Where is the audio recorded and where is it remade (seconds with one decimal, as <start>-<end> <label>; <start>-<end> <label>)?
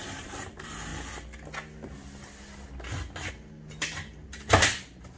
0.0-0.9 remade; 0.9-3.3 recorded; 3.3-5.2 remade